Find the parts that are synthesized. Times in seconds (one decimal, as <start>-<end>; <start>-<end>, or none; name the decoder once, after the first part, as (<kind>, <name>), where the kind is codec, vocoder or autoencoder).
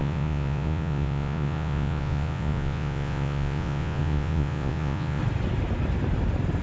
0.0-5.2 (vocoder, Vocos)